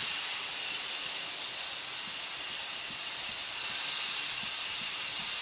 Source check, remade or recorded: recorded